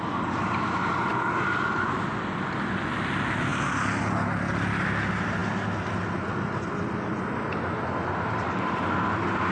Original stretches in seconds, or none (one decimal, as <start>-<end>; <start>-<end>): 0.0-9.5